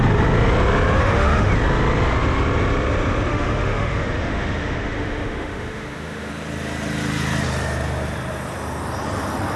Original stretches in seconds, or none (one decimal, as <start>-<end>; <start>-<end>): 0.0-1.0; 1.5-3.3; 6.3-9.6

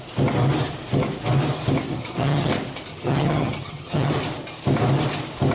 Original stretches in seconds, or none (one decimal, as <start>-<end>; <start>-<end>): 0.0-1.9; 2.5-2.9; 4.1-5.5